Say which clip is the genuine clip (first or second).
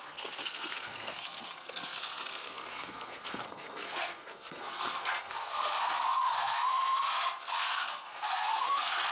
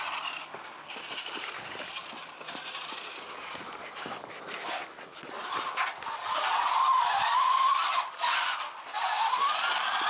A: second